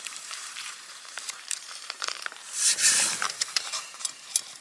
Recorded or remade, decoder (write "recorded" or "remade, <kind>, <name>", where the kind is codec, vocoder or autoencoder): remade, vocoder, BigVGAN v2